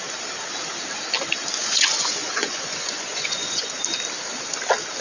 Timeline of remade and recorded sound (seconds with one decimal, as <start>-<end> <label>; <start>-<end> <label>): 0.0-1.6 recorded; 1.6-3.7 remade; 3.7-5.0 recorded